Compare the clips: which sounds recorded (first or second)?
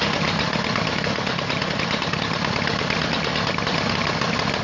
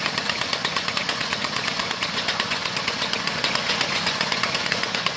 first